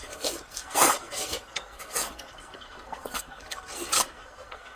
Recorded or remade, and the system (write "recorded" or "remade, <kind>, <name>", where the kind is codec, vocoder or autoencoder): remade, codec, SNAC